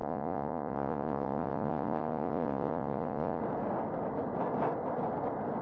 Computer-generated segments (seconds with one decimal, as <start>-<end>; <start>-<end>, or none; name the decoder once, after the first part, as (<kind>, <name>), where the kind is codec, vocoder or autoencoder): 0.0-3.4 (vocoder, Vocos)